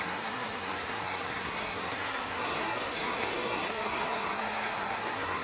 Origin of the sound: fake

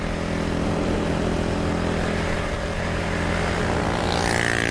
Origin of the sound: real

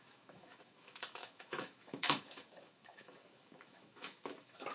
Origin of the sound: fake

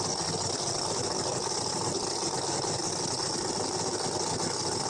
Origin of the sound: real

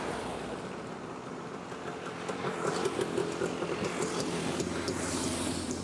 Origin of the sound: real